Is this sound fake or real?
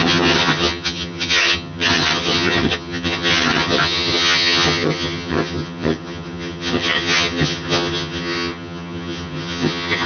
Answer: fake